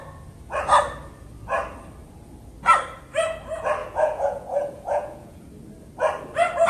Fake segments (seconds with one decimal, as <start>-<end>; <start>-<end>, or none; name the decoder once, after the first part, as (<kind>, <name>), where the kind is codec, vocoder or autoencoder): 3.8-5.4 (vocoder, Vocos)